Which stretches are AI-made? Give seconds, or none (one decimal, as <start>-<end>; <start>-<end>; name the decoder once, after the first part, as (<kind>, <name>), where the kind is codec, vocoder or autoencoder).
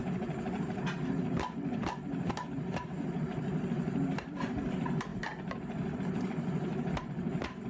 0.0-7.7 (vocoder, BigVGAN v2)